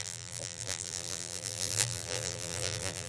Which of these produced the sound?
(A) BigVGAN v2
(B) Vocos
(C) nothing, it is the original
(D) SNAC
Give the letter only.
A